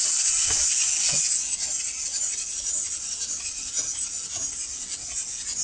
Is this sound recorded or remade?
recorded